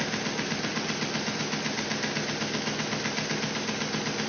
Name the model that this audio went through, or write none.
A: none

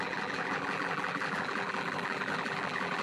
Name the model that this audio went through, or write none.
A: vocoder, BigVGAN v2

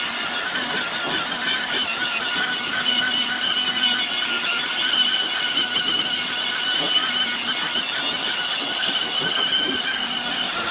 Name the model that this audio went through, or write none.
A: none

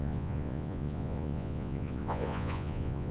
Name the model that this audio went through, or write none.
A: vocoder, Vocos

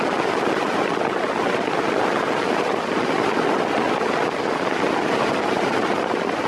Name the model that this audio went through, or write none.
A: none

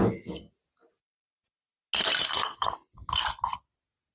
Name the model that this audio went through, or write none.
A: none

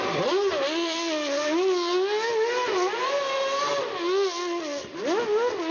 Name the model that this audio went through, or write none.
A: none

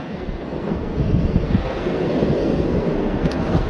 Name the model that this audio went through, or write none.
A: codec, SNAC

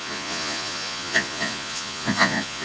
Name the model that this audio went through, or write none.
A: vocoder, Vocos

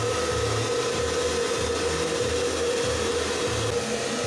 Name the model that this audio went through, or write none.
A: none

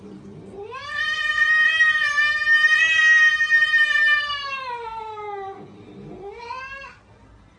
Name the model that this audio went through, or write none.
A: none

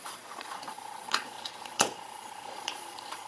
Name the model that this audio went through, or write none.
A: vocoder, Vocos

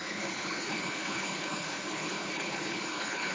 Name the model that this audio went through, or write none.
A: codec, HILCodec